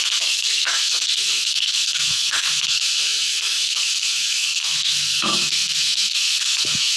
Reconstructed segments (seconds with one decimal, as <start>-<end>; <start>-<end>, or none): 0.0-7.0